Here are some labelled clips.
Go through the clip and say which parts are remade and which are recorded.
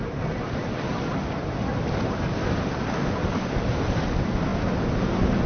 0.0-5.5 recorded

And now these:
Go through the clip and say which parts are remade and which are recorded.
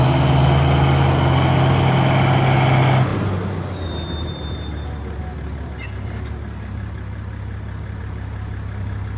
0.0-9.2 recorded